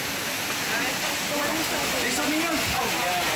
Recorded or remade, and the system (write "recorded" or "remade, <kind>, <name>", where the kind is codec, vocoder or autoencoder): recorded